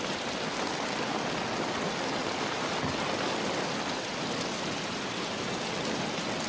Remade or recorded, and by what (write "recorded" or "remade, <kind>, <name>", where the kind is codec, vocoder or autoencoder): recorded